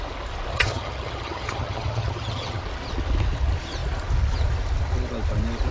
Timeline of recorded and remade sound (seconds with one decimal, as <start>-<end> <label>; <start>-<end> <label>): 0.0-0.5 recorded; 0.5-2.6 remade; 2.6-5.7 recorded